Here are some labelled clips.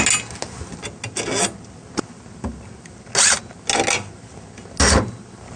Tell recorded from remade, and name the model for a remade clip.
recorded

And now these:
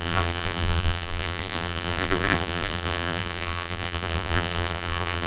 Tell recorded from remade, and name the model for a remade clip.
remade, vocoder, BigVGAN v2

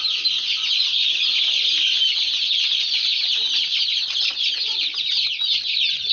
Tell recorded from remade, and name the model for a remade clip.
recorded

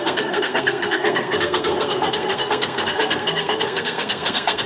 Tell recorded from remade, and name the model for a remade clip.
remade, codec, SNAC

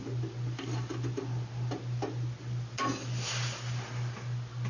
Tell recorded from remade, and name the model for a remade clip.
recorded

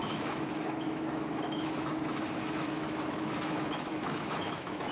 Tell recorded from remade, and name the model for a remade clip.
remade, autoencoder, DAC-VAE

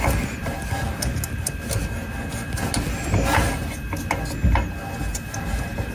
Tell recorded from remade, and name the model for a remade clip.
recorded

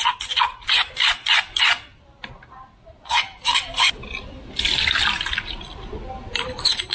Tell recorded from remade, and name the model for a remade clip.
recorded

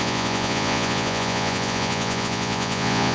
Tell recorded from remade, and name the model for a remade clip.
remade, vocoder, Vocos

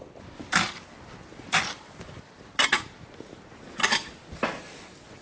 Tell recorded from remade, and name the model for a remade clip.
recorded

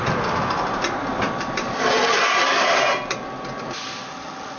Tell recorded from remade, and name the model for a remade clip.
remade, vocoder, BigVGAN v2